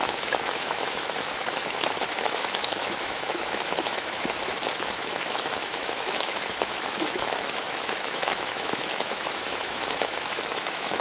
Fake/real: fake